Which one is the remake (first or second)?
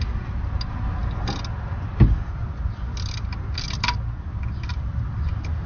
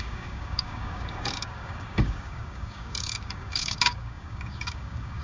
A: second